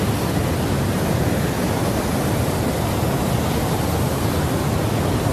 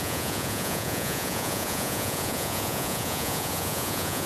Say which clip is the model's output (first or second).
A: second